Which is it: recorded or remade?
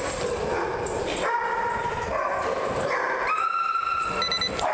recorded